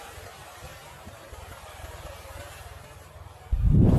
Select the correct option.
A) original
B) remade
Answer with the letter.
B